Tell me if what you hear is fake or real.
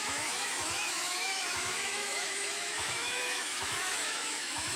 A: fake